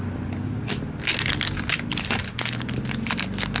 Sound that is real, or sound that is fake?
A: real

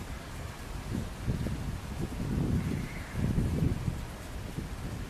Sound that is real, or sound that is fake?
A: real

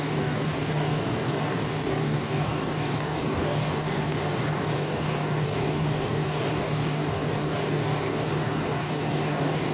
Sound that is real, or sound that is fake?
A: fake